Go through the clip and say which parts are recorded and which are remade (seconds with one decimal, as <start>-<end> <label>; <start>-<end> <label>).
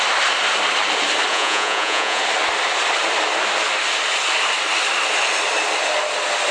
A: 0.0-1.3 recorded; 1.3-2.2 remade; 2.2-6.5 recorded